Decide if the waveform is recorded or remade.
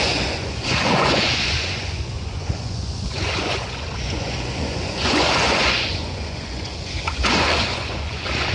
remade